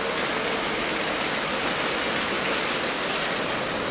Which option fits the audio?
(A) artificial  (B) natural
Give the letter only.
B